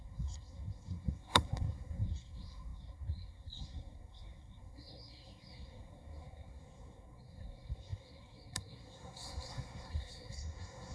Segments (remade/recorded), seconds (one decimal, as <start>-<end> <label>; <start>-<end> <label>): 0.0-10.9 remade